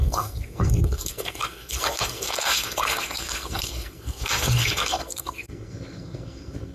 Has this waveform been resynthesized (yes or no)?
yes